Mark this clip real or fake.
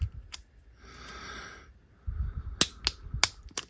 real